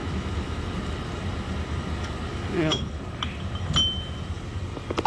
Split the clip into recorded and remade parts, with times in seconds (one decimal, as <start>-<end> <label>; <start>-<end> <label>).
0.0-0.6 remade; 0.6-2.3 recorded; 2.3-3.0 remade; 3.0-5.1 recorded